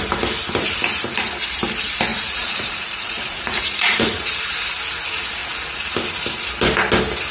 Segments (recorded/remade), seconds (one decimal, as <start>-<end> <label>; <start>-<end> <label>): 0.0-2.1 recorded; 2.1-4.2 remade; 4.2-7.3 recorded